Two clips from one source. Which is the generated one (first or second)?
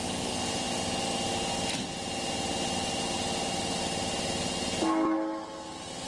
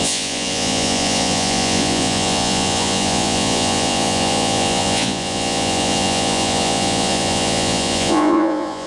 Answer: second